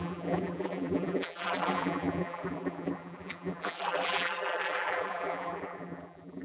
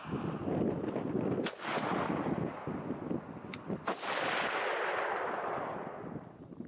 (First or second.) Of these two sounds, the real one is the second